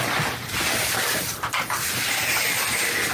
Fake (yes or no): no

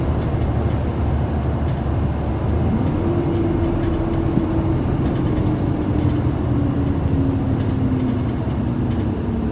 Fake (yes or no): no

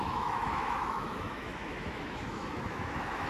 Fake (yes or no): yes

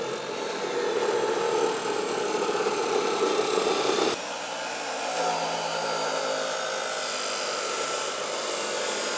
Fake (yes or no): no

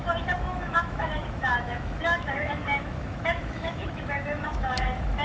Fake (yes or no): yes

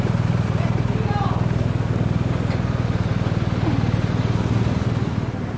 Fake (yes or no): no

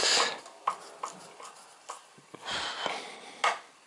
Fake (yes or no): no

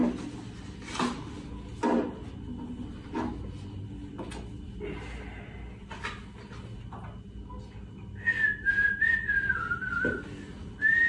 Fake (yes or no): no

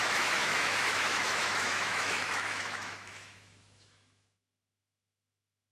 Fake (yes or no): yes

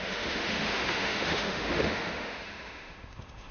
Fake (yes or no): yes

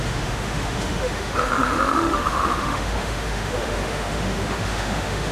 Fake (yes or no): yes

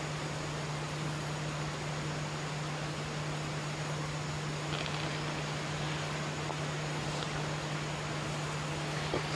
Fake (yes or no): no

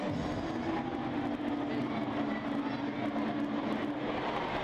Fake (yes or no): no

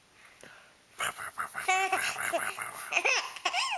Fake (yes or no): no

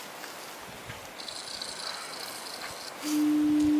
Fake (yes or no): no